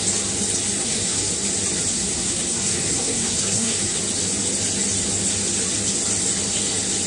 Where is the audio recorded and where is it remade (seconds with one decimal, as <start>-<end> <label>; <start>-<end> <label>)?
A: 0.0-0.8 recorded; 0.8-1.3 remade; 1.3-1.9 recorded; 1.9-4.0 remade; 4.0-7.1 recorded